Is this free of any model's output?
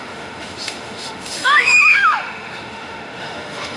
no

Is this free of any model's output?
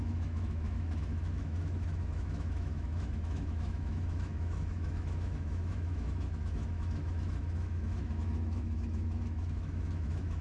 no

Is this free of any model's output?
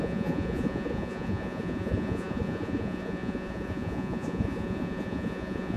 no